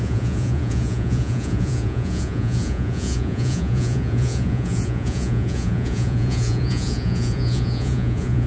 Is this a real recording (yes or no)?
no